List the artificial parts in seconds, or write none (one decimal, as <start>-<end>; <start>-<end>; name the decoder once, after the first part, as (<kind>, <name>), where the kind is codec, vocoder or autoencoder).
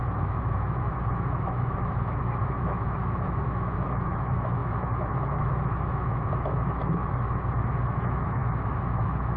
0.0-9.4 (autoencoder, DAC-VAE)